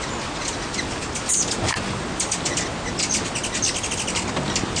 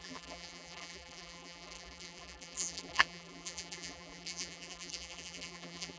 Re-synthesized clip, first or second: second